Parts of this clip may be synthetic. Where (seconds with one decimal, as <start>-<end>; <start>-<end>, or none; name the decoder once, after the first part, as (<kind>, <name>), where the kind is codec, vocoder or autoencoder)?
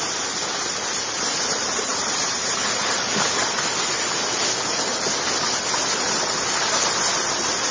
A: none